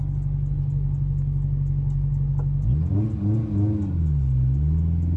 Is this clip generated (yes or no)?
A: no